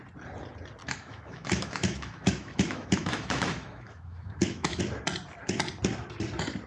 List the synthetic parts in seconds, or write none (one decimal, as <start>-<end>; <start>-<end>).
0.8-4.8